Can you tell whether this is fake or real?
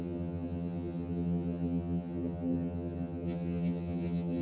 fake